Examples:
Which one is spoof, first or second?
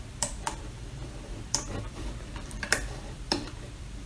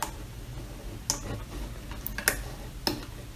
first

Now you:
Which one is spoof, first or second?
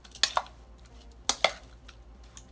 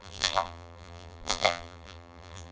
second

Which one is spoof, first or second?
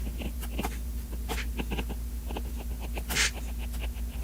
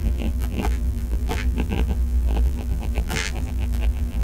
second